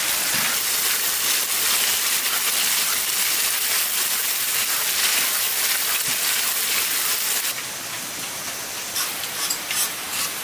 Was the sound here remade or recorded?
recorded